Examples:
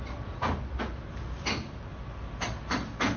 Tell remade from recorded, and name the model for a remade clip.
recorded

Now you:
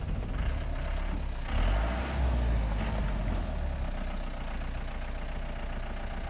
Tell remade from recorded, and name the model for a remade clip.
recorded